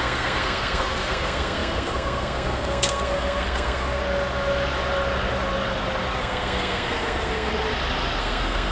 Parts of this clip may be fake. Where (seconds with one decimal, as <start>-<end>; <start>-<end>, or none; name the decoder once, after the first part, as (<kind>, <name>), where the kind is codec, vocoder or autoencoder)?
0.0-4.0 (codec, SNAC); 6.2-7.5; 8.2-8.7